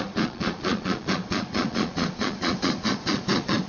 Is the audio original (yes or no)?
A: no